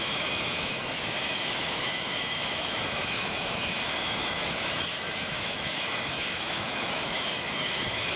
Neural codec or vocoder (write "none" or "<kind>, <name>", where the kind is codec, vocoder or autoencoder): autoencoder, DAC-VAE